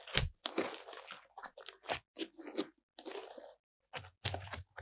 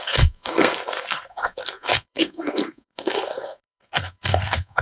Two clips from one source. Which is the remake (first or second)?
second